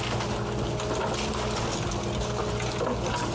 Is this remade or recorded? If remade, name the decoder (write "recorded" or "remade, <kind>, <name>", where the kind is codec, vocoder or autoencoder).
recorded